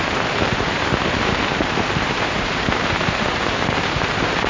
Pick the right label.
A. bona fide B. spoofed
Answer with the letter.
B